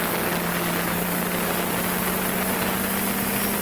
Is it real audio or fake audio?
real